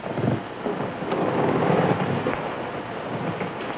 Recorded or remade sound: recorded